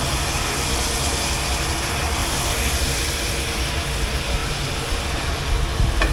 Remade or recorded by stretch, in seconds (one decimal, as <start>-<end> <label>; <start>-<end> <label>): 0.0-2.2 recorded; 2.2-3.3 remade; 3.3-4.4 recorded; 4.4-5.3 remade; 5.3-6.1 recorded